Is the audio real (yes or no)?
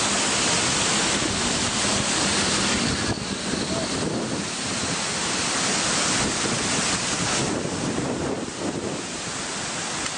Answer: yes